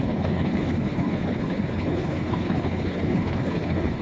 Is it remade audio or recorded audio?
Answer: remade